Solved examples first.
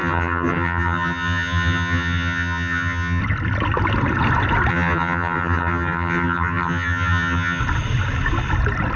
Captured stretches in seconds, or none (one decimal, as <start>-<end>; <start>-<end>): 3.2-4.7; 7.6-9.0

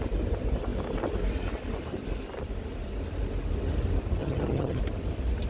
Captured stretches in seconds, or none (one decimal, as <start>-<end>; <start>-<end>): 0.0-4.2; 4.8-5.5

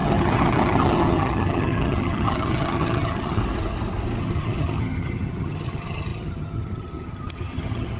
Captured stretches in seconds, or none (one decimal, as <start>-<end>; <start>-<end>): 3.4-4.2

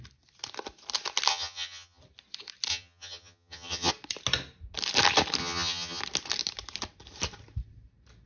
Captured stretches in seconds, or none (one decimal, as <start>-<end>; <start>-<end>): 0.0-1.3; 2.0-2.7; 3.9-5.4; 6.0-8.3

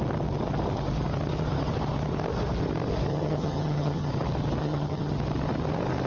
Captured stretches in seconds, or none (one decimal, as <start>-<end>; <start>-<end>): 0.0-3.1; 4.1-4.6; 5.1-6.1

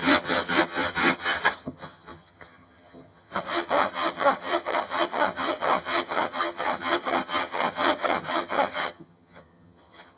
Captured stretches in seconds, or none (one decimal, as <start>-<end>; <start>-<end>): none